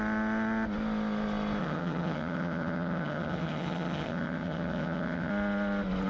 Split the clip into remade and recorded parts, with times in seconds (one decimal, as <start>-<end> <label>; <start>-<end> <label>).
0.0-1.6 recorded; 1.6-5.3 remade; 5.3-6.1 recorded

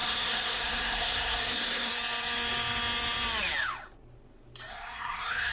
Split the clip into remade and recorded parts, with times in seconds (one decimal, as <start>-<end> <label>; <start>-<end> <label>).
0.0-1.9 remade; 1.9-4.7 recorded; 4.7-5.5 remade

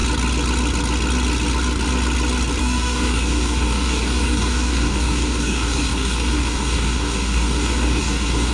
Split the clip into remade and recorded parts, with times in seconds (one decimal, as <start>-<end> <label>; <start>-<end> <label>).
0.0-2.6 recorded; 2.6-8.5 remade

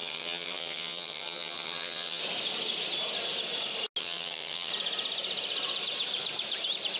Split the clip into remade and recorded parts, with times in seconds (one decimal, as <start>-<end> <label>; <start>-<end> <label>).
0.0-2.2 remade; 2.2-4.0 recorded; 4.0-4.7 remade; 4.7-7.0 recorded

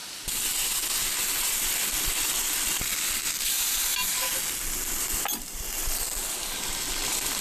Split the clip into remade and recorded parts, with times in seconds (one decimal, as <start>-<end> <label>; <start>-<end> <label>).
0.0-1.6 recorded; 1.6-4.0 remade; 4.0-5.0 recorded; 5.0-7.4 remade

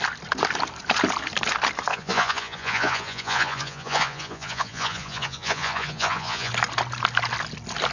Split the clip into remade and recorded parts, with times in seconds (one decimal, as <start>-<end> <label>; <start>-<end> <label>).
0.0-1.9 recorded; 1.9-6.5 remade; 6.5-7.9 recorded

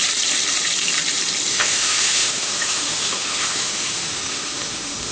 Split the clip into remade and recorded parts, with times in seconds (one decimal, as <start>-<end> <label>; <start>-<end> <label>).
0.0-1.5 recorded; 1.5-5.1 remade